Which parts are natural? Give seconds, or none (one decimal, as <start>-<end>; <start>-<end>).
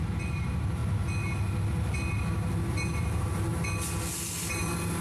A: 0.8-2.7; 3.5-4.5